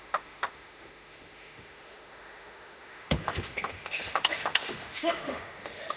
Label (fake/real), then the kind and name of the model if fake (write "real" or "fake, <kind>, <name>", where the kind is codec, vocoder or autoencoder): fake, autoencoder, DAC-VAE